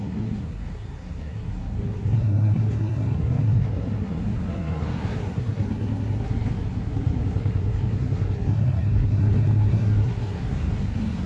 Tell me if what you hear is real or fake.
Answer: fake